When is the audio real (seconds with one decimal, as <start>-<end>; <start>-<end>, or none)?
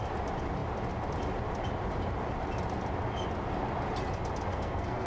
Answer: 0.0-4.5